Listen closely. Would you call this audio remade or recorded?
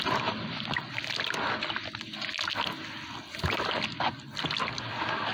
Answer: recorded